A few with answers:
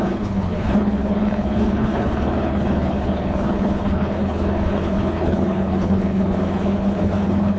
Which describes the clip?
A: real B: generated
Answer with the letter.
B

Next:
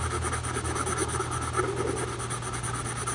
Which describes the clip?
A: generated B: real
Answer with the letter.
B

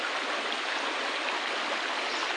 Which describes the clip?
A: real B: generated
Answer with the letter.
A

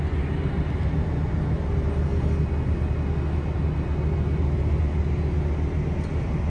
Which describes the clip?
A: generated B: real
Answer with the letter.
B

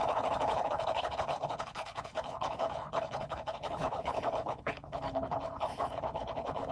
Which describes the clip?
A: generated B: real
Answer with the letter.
A